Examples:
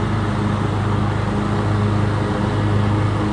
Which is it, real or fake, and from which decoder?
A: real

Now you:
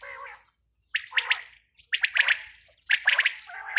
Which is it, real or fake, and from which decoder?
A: real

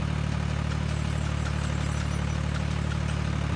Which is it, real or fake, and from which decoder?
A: real